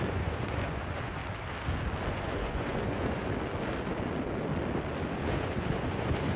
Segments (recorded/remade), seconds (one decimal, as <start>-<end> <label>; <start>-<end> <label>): 0.0-1.2 remade; 1.2-2.1 recorded; 2.1-3.2 remade; 3.2-5.1 recorded; 5.1-6.4 remade